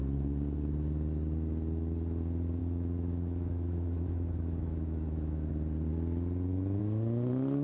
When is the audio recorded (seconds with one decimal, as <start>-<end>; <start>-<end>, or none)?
0.0-2.6; 5.5-7.6